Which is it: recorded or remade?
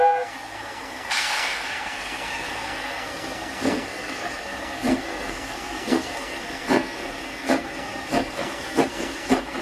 remade